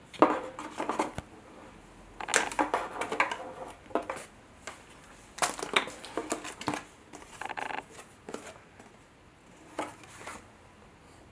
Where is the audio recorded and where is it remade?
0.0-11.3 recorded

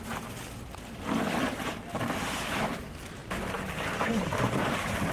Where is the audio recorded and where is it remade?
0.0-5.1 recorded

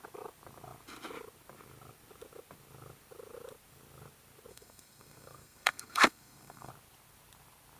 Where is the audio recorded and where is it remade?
0.0-4.5 recorded; 4.5-6.7 remade; 6.7-7.8 recorded

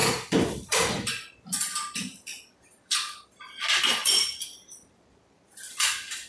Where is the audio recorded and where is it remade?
0.0-6.3 remade

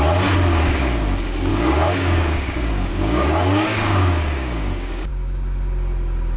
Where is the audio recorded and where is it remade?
0.0-1.5 recorded; 1.5-5.1 remade; 5.1-6.4 recorded